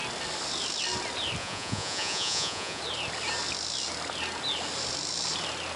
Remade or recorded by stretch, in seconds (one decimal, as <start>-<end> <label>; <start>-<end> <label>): 0.0-1.4 recorded; 1.4-2.8 remade; 2.8-5.8 recorded

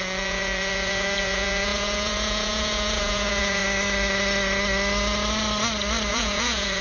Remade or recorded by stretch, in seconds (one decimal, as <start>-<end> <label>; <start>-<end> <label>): 0.0-3.6 remade; 3.6-6.1 recorded; 6.1-6.8 remade

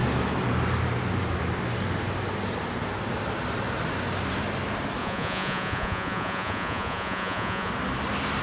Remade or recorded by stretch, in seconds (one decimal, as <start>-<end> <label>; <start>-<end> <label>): 0.0-5.0 recorded; 5.0-7.7 remade; 7.7-8.4 recorded

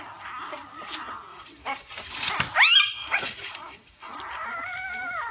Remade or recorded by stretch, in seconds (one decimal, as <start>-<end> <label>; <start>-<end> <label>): 0.0-1.3 recorded; 1.3-2.3 remade; 2.3-3.0 recorded; 3.0-4.2 remade; 4.2-5.3 recorded

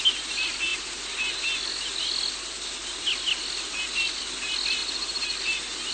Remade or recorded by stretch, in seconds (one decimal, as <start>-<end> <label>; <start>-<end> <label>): 0.0-5.9 recorded

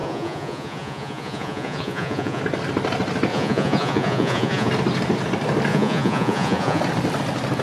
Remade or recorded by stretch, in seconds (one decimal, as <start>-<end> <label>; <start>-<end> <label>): 0.0-2.4 remade; 2.4-3.3 recorded; 3.3-4.7 remade; 4.7-5.7 recorded; 5.7-6.8 remade; 6.8-7.6 recorded

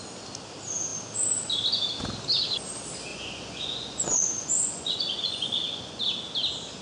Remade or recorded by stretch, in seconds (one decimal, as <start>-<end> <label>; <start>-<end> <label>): 0.0-3.1 recorded; 3.1-6.0 remade; 6.0-6.8 recorded

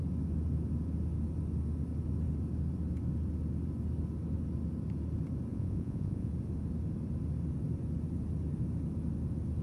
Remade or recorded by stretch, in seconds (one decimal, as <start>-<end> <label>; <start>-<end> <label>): 0.0-5.5 recorded; 5.5-6.3 remade; 6.3-9.6 recorded